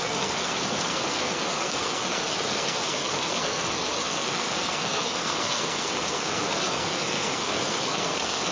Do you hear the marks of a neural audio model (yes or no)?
yes